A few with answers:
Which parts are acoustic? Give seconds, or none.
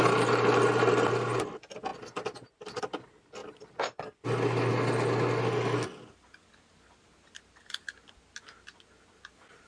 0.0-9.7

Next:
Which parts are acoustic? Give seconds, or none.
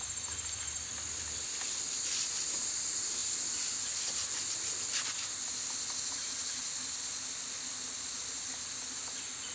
0.0-9.5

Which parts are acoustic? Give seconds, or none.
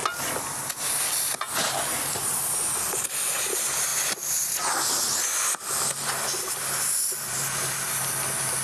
0.0-8.6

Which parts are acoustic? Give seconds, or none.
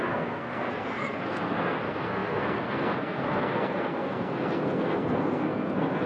none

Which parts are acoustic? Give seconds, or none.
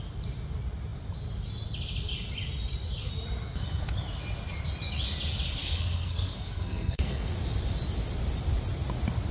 0.0-5.6; 7.3-9.3